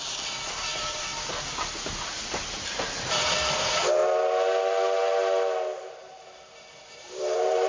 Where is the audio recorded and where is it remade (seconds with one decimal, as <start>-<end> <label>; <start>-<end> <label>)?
0.0-1.1 remade; 1.1-2.3 recorded; 2.3-4.0 remade; 4.0-6.9 recorded; 6.9-7.7 remade